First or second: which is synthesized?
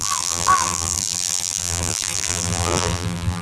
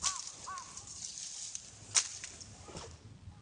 first